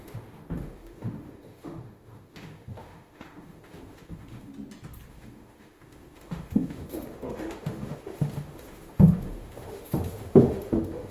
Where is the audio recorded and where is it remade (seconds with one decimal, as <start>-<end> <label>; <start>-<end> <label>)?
0.0-4.5 remade; 4.5-5.1 recorded; 5.1-11.1 remade